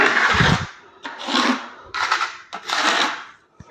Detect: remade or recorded remade